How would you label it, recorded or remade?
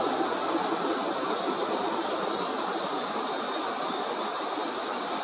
recorded